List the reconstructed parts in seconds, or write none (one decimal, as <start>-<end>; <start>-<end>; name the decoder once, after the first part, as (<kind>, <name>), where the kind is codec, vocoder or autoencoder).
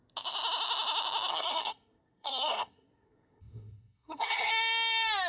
1.3-4.5 (codec, SNAC)